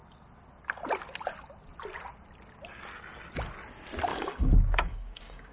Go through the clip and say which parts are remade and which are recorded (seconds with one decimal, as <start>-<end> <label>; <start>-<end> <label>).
0.0-4.1 recorded; 4.1-5.5 remade